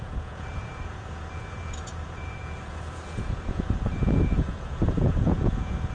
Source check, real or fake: fake